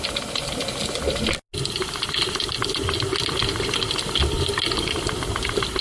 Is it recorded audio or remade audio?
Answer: recorded